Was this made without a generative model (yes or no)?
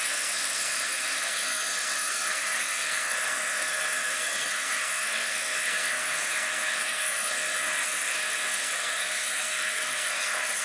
no